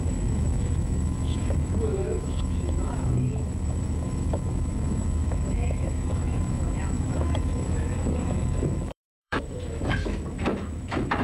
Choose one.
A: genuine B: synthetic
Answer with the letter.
B